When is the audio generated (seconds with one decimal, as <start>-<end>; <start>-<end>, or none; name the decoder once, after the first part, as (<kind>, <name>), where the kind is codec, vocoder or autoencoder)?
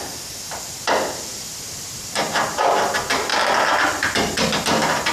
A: 1.3-2.9 (vocoder, BigVGAN v2)